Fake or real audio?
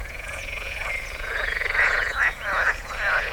fake